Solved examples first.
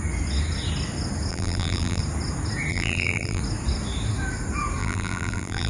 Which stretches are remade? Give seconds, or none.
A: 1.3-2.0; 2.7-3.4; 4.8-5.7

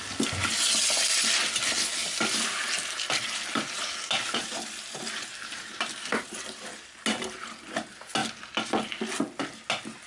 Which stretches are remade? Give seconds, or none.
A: 2.0-6.3

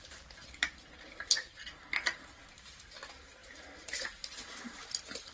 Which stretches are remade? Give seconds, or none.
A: none